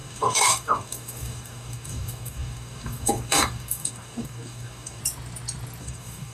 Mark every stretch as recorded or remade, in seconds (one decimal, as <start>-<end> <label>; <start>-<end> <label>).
0.0-5.0 remade; 5.0-5.8 recorded; 5.8-6.3 remade